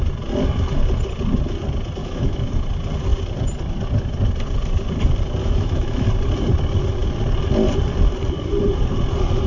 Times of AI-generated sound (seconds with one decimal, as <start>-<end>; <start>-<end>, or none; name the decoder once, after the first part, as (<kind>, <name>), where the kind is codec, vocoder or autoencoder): 2.0-2.5 (autoencoder, DAC-VAE); 5.4-6.1